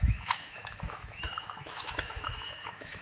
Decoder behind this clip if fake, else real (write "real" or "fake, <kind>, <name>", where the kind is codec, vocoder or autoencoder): fake, autoencoder, DAC-VAE